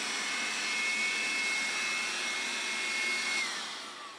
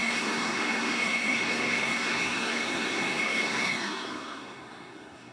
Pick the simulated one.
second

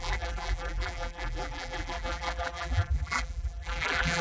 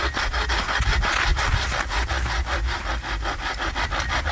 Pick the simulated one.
first